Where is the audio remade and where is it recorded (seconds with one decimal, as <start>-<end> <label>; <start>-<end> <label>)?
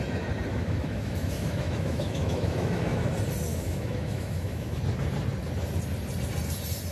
0.0-0.5 recorded; 0.5-3.0 remade; 3.0-3.5 recorded; 3.5-4.8 remade; 4.8-6.9 recorded